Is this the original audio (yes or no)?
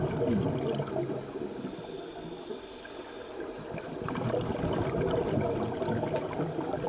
yes